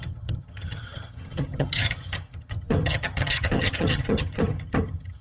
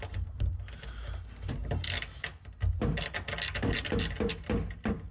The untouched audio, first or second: second